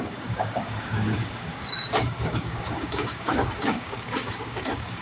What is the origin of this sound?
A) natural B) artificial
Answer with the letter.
B